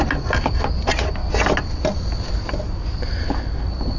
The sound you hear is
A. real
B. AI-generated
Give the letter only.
A